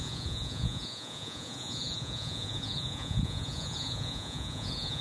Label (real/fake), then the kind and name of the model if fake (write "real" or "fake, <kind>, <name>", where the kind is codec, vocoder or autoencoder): fake, vocoder, Vocos